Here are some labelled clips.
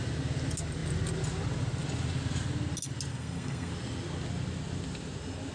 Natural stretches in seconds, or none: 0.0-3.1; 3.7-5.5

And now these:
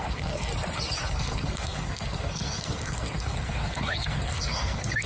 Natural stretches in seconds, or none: 0.5-1.0

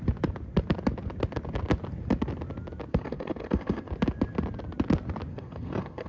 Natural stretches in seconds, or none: 0.0-2.9; 3.9-5.3

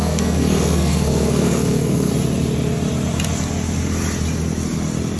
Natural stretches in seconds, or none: 2.1-5.2

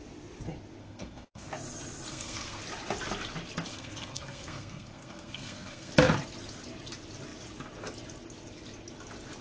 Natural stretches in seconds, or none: 0.0-0.8; 1.5-2.1; 2.6-3.7; 5.9-9.4

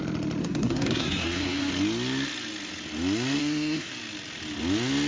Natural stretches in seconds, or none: 0.0-0.4; 1.7-3.4; 3.9-5.1

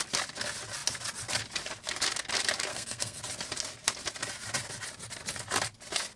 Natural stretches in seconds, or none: 0.0-2.7; 3.2-6.2

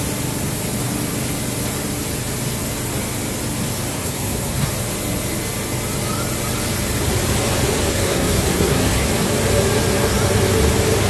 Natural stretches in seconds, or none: 0.0-3.9; 4.7-7.9; 9.1-11.1